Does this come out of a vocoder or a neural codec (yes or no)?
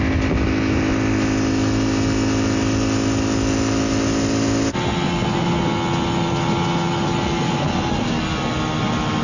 no